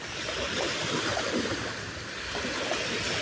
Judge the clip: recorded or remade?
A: recorded